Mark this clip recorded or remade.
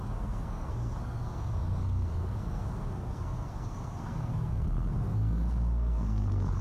remade